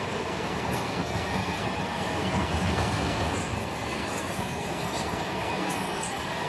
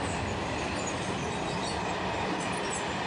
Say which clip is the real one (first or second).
second